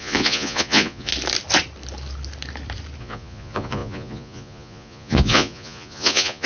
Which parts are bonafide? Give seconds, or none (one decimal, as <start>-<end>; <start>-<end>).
1.1-3.0